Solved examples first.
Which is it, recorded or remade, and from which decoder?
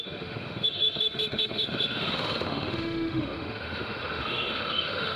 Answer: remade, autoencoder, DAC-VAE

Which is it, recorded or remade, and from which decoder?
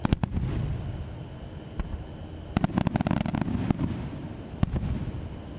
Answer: recorded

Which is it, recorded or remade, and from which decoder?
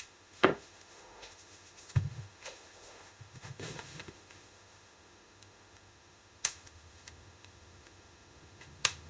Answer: remade, autoencoder, DAC-VAE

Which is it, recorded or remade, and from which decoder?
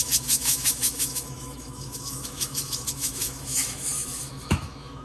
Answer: remade, autoencoder, DAC-VAE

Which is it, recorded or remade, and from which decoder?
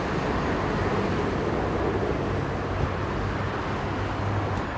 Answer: recorded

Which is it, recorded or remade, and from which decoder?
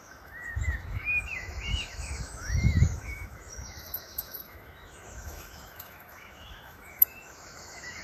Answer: remade, autoencoder, DAC-VAE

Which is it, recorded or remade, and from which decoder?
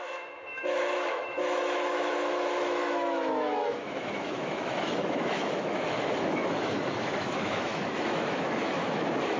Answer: remade, autoencoder, DAC-VAE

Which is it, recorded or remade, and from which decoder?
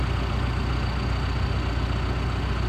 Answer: recorded